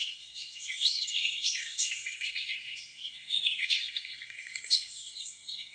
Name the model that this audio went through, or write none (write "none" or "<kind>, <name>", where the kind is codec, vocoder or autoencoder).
codec, SNAC